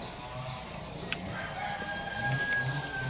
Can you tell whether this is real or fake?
real